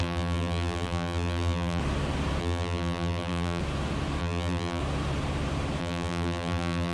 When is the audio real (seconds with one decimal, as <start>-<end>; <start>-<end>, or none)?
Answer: 1.8-2.4; 3.6-4.2; 4.8-5.8